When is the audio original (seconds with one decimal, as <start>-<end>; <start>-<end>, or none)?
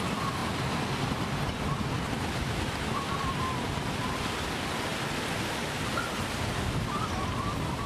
0.4-4.3; 4.9-5.6